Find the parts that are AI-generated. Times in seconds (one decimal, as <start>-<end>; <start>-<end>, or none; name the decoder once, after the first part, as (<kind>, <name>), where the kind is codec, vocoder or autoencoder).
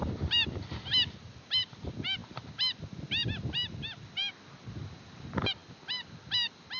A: none